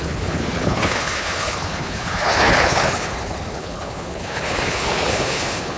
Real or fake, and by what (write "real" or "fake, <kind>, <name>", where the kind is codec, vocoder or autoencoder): fake, codec, HILCodec